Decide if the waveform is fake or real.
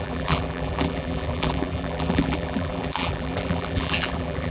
fake